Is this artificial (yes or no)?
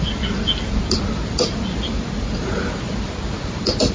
no